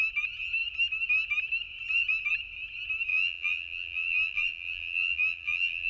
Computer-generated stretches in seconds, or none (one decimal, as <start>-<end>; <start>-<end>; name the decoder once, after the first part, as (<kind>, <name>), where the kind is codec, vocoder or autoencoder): 3.1-5.9 (vocoder, BigVGAN v2)